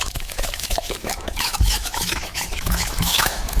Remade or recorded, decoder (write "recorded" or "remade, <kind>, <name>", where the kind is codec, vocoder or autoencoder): remade, autoencoder, DAC-VAE